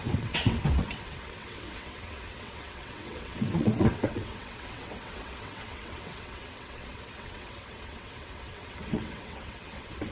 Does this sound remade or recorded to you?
remade